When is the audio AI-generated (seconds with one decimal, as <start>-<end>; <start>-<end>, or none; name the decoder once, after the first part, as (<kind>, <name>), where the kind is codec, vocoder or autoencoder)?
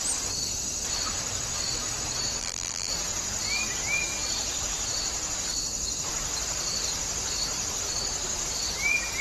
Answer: 2.4-2.9 (vocoder, BigVGAN v2)